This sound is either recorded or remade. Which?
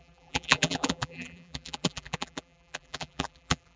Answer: remade